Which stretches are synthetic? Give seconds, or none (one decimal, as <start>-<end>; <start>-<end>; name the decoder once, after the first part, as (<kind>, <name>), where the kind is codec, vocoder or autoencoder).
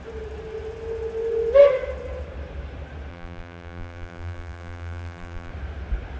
3.1-5.5 (vocoder, BigVGAN v2)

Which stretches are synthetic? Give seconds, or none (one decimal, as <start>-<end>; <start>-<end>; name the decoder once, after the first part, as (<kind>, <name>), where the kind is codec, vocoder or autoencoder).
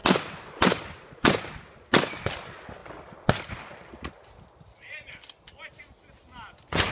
2.8-4.6 (vocoder, BigVGAN v2)